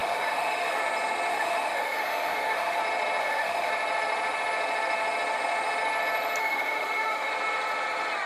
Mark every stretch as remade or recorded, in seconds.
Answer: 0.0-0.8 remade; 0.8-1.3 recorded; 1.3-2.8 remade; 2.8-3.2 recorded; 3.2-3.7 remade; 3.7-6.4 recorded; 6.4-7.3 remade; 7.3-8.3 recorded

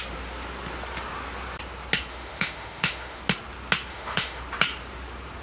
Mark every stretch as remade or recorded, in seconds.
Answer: 0.0-2.1 recorded; 2.1-3.2 remade; 3.2-3.9 recorded; 3.9-4.4 remade; 4.4-5.4 recorded

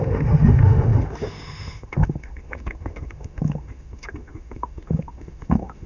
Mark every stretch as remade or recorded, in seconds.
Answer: 0.0-5.9 remade

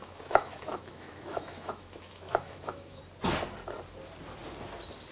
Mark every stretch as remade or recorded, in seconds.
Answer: 0.0-3.0 remade; 3.0-5.1 recorded

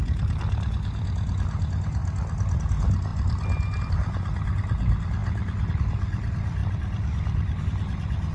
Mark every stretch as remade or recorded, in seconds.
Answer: 0.0-8.3 recorded

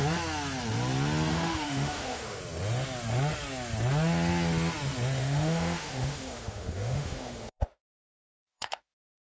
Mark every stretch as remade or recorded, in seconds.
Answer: 0.0-1.3 recorded; 1.3-2.4 remade; 2.4-5.2 recorded; 5.2-9.2 remade